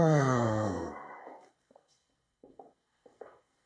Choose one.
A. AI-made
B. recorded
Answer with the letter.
A